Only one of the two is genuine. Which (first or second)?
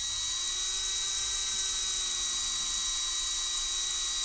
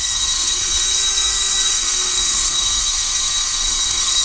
first